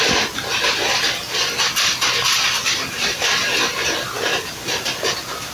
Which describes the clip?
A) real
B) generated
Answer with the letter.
A